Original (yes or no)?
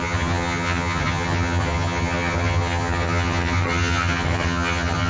no